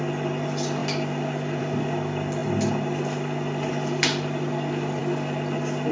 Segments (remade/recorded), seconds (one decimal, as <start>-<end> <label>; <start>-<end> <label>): 0.0-5.9 recorded